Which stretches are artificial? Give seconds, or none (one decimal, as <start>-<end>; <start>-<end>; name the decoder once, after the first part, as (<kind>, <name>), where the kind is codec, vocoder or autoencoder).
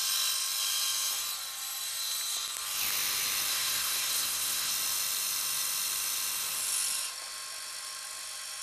3.5-4.7 (codec, SNAC)